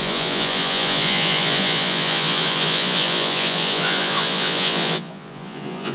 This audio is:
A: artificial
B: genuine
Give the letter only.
A